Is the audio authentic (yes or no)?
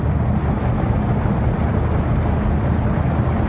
yes